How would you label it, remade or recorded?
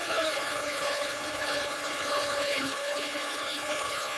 remade